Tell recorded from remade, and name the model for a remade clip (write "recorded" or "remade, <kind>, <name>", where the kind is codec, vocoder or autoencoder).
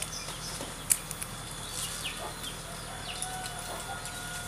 recorded